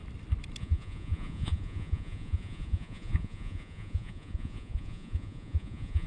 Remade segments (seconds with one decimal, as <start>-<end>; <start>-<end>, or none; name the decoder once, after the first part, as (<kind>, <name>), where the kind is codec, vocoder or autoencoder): 0.6-6.1 (vocoder, Vocos)